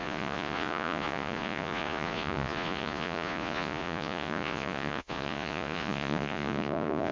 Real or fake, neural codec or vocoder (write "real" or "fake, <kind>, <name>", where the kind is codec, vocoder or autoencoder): fake, vocoder, Vocos